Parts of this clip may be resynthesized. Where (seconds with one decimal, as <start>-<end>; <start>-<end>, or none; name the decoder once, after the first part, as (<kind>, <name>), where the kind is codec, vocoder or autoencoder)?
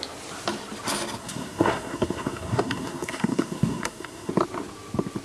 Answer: 1.2-4.3 (codec, SNAC)